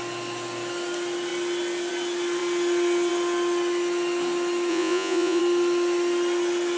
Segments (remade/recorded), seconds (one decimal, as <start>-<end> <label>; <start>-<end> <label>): 0.0-4.7 recorded; 4.7-5.4 remade; 5.4-6.8 recorded